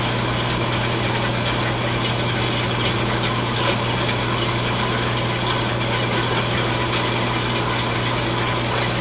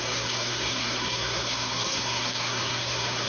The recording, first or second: first